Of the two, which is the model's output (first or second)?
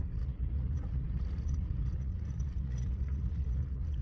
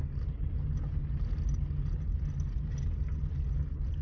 first